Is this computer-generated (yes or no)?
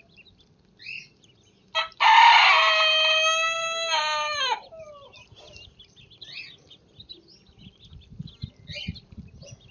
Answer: no